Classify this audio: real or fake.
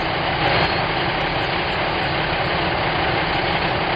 real